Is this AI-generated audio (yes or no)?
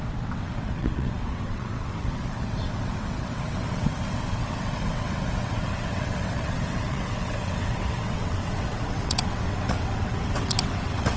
yes